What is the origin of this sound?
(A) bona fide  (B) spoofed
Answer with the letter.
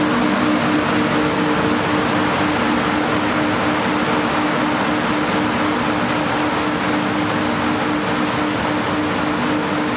A